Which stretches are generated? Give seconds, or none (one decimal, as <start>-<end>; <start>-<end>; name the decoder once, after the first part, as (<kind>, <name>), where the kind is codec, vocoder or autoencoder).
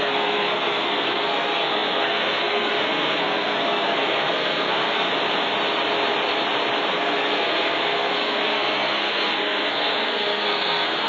0.0-5.1 (codec, SNAC); 6.9-11.1